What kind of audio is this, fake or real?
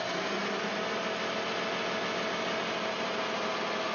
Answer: real